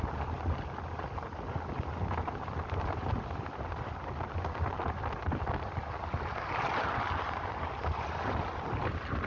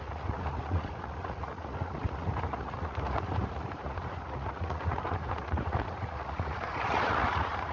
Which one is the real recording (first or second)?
first